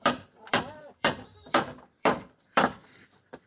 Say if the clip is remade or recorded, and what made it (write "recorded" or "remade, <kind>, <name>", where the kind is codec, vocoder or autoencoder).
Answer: remade, vocoder, BigVGAN v2